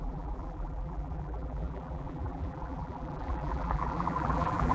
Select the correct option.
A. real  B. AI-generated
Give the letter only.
B